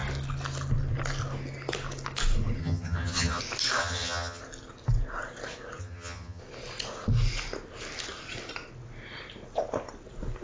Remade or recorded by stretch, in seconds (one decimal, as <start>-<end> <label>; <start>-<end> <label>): 0.0-2.6 recorded; 2.6-3.4 remade; 3.4-3.8 recorded; 3.8-4.4 remade; 4.4-5.8 recorded; 5.8-6.4 remade; 6.4-10.4 recorded